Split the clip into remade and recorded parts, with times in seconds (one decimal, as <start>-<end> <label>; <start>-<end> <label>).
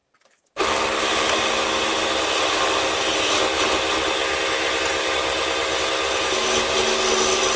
0.0-7.6 recorded